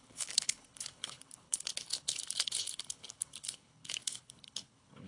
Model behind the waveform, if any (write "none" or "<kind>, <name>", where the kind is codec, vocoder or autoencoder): codec, HILCodec